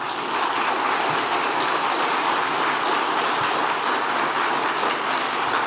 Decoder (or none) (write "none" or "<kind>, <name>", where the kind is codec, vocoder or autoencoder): none